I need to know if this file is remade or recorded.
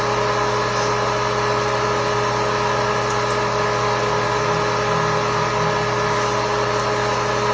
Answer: recorded